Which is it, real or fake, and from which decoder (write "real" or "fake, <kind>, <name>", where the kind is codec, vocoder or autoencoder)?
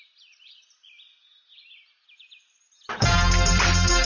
fake, vocoder, BigVGAN v2